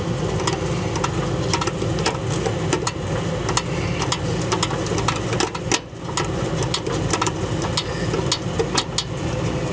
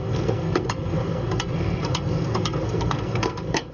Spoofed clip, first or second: second